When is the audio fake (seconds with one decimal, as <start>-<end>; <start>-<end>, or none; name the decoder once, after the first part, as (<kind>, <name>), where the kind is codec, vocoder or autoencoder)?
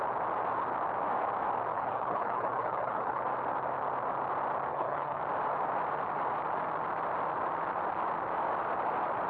1.7-3.2 (codec, HILCodec); 4.7-5.2